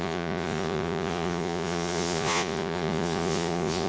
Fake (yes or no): yes